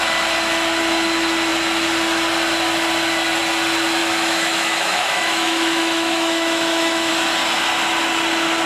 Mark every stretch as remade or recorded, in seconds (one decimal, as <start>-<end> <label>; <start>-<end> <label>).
0.0-4.0 recorded; 4.0-7.1 remade; 7.1-8.7 recorded